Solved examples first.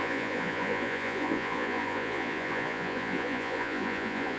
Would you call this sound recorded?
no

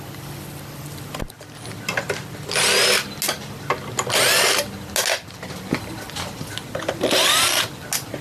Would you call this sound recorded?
yes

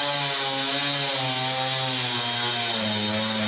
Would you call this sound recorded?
yes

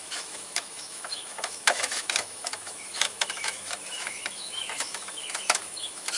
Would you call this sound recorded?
no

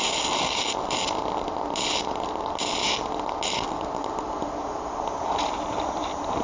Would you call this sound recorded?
yes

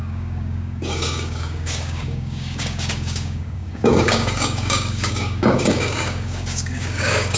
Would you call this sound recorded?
no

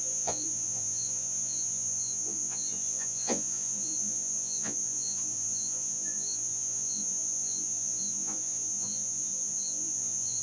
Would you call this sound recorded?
no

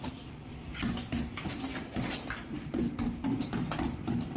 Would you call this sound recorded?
yes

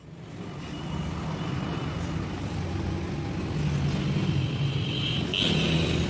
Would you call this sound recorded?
yes